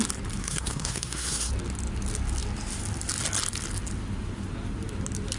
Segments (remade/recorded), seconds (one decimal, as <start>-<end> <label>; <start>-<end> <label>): 0.0-0.4 recorded; 0.4-1.5 remade; 1.5-5.4 recorded